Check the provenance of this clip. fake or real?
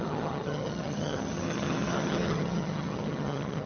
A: fake